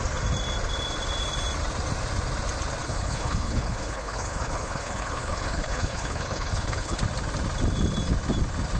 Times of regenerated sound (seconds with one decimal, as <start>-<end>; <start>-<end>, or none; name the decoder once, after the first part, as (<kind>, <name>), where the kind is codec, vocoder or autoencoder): 2.8-7.0 (codec, HILCodec)